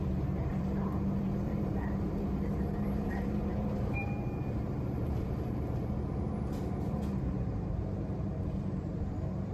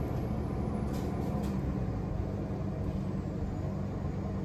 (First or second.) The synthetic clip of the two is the first